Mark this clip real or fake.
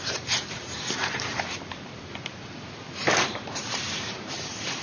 fake